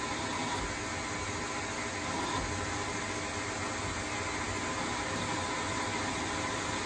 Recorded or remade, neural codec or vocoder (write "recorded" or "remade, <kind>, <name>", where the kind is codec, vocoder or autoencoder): recorded